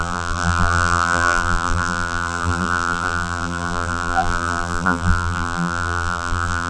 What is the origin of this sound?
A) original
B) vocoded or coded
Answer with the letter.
B